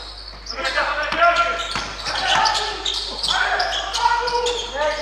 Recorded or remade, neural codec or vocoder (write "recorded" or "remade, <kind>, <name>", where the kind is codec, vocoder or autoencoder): remade, vocoder, BigVGAN v2